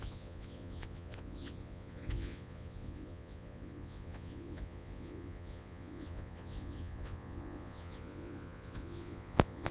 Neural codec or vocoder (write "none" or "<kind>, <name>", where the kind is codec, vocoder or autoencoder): vocoder, Vocos